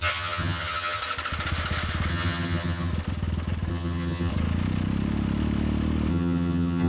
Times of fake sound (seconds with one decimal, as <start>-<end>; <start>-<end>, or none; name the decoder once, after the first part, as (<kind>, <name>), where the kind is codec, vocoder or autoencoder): 0.0-1.0 (vocoder, HiFi-GAN); 2.1-2.9; 3.7-4.3; 6.1-6.9